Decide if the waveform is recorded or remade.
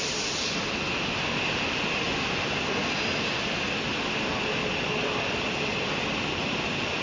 recorded